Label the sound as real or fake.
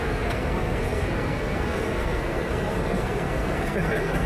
fake